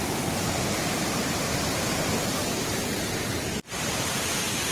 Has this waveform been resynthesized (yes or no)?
yes